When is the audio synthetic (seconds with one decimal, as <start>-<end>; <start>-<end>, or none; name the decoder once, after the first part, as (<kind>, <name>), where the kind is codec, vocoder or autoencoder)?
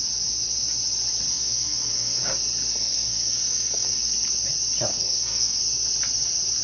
1.3-2.2 (codec, SNAC); 2.7-4.1; 4.9-5.6